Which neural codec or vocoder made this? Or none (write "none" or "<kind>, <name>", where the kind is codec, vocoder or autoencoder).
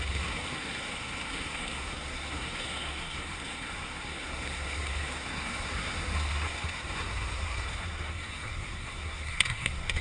codec, SNAC